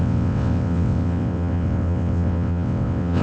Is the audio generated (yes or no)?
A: yes